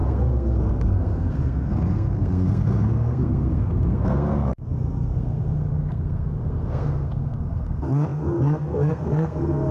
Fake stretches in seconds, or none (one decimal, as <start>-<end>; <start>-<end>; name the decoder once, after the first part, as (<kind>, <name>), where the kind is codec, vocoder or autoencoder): 0.0-9.7 (codec, SNAC)